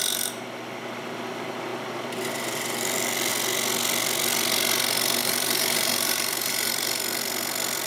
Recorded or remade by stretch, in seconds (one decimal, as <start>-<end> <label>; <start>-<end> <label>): 0.0-5.2 recorded; 5.2-6.7 remade; 6.7-7.9 recorded